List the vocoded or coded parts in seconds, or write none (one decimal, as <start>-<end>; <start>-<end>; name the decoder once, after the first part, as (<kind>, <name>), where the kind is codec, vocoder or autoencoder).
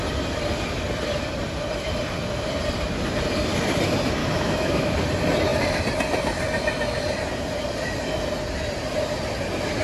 4.2-4.9 (autoencoder, DAC-VAE)